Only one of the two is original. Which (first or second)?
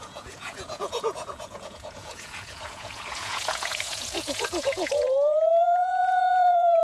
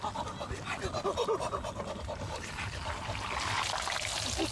second